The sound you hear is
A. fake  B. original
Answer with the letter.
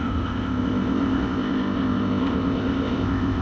A